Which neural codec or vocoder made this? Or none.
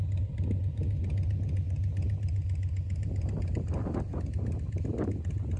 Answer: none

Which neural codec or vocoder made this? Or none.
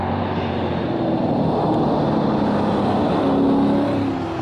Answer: none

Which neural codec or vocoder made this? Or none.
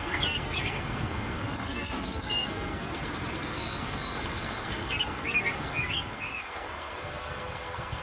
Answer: codec, SNAC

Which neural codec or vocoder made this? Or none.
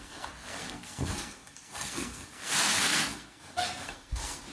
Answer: codec, SNAC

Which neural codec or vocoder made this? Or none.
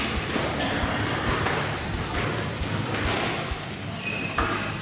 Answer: none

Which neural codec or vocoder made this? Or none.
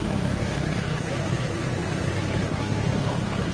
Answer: codec, SNAC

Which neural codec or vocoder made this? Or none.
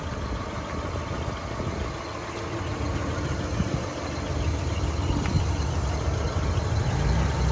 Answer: none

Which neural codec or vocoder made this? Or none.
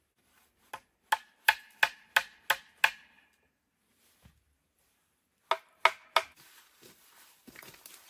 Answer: none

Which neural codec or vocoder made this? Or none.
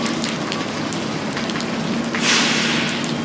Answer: none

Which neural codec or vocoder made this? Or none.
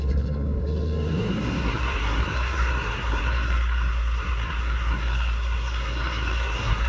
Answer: codec, SNAC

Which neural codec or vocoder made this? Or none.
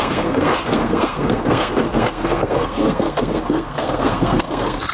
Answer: codec, SNAC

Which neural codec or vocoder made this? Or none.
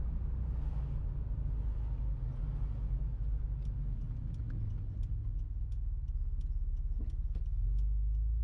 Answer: none